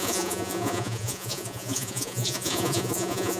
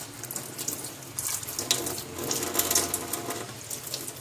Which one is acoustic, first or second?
second